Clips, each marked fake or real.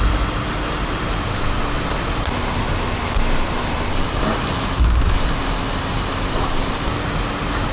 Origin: fake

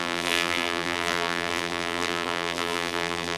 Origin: fake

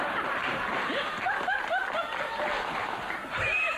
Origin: fake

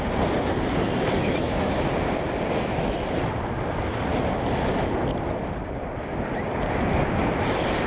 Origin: real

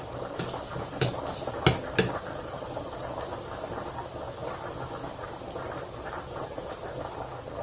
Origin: real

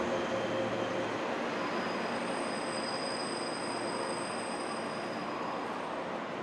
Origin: real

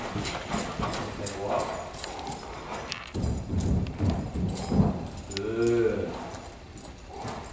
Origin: real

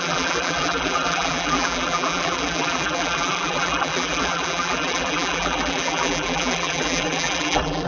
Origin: fake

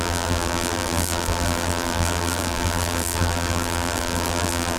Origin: fake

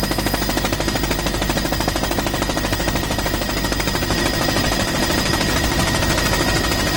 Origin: real